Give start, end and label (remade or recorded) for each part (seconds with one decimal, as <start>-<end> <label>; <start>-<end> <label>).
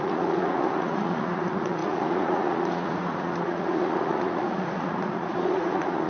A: 0.0-6.1 remade